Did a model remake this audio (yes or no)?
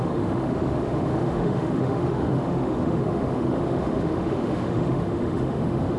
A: yes